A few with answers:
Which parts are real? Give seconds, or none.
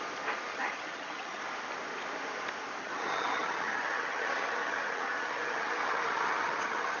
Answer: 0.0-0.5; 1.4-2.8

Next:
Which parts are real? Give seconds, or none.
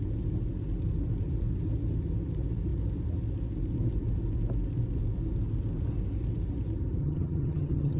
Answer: 0.0-7.0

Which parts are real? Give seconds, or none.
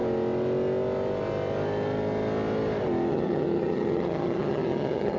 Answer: 0.0-3.1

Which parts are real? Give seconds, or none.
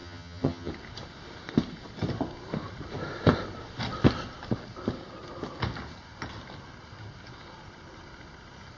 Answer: 0.7-8.8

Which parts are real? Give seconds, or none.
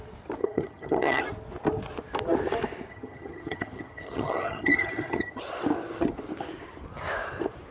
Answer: 0.0-0.4; 1.2-2.9; 5.4-7.7